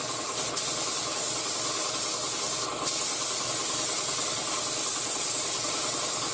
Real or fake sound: real